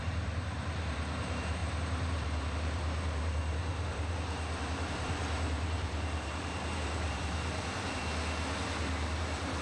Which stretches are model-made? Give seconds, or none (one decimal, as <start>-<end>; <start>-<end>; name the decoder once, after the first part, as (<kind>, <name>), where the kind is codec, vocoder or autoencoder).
0.0-8.0 (vocoder, BigVGAN v2); 9.2-9.6